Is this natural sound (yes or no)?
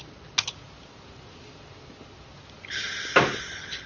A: yes